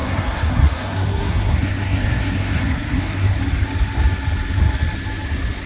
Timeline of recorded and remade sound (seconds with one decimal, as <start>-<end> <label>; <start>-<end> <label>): 0.0-3.4 remade; 3.4-5.7 recorded